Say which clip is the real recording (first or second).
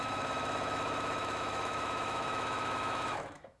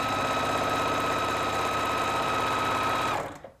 second